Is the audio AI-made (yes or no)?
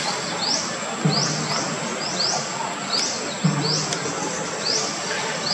no